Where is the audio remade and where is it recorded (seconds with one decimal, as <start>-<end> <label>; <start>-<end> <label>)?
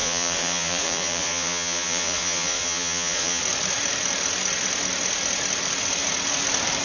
0.0-3.4 remade; 3.4-6.8 recorded